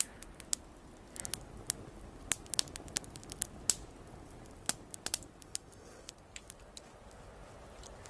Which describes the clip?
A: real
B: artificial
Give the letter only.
A